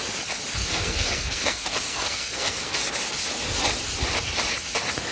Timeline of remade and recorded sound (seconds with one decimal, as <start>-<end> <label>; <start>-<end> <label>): 0.0-0.6 recorded; 0.6-2.8 remade; 2.8-5.1 recorded